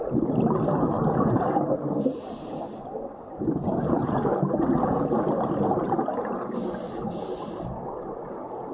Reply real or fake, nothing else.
real